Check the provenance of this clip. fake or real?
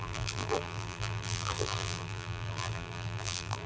fake